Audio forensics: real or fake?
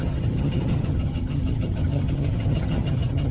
fake